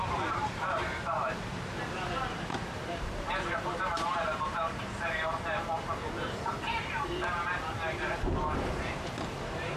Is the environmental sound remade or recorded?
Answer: remade